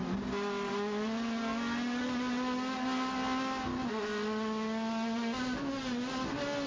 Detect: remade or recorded recorded